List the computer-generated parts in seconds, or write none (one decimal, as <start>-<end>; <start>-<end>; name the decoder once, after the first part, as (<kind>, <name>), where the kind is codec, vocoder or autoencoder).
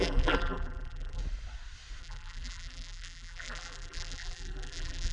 0.0-1.2 (vocoder, BigVGAN v2); 2.0-5.1